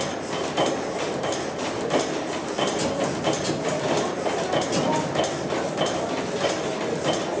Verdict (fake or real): real